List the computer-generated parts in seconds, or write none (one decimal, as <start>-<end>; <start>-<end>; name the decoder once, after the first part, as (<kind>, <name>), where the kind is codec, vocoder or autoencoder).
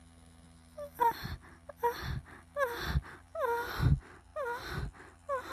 none